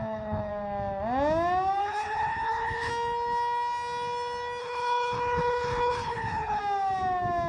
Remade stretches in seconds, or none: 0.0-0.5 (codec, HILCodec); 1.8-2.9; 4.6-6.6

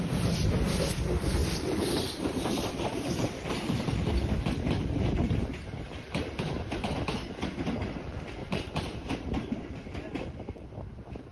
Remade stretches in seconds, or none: 1.4-6.4 (vocoder, BigVGAN v2); 8.4-10.1

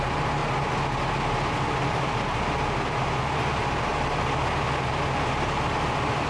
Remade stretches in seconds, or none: none